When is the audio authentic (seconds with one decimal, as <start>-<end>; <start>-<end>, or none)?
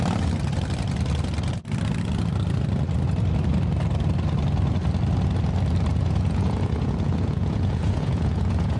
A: 0.0-5.9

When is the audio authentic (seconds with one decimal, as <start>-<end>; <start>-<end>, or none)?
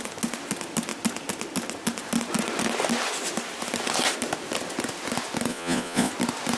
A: 0.0-5.5; 6.1-6.6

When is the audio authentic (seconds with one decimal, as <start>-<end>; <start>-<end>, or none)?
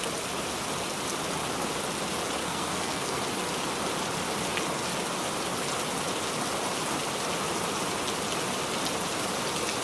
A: 0.0-2.4; 3.2-9.8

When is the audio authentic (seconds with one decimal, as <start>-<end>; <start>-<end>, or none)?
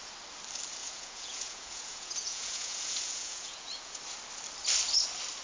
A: 0.0-0.8; 4.0-5.4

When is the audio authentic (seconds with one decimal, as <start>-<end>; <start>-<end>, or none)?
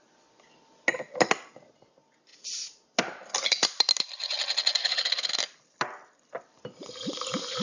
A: 0.0-4.8; 5.3-7.6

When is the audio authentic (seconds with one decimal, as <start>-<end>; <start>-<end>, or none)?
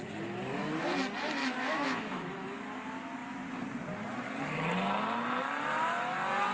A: 0.0-1.4; 2.6-6.5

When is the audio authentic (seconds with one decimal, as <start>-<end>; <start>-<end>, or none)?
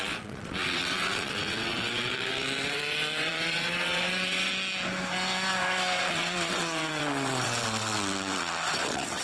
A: 4.5-6.0